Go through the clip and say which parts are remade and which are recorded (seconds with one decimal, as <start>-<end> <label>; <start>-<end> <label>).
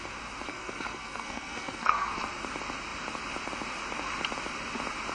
0.0-0.5 recorded; 0.5-2.2 remade; 2.2-5.1 recorded